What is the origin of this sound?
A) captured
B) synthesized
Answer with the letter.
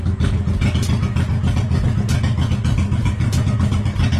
A